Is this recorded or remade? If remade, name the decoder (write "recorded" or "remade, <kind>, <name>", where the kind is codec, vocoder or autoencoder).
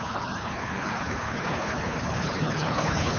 remade, codec, HILCodec